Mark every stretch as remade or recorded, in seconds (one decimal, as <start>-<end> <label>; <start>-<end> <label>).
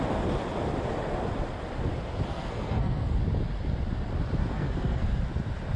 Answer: 0.0-2.3 recorded; 2.3-3.2 remade; 3.2-4.4 recorded; 4.4-5.2 remade; 5.2-5.8 recorded